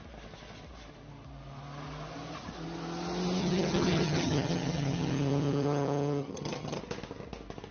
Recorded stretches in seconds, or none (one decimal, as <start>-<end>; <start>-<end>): 0.0-3.4; 6.8-7.7